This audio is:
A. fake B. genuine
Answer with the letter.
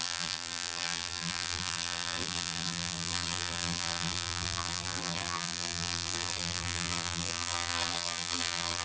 A